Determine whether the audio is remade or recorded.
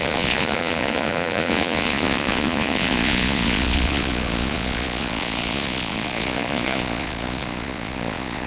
remade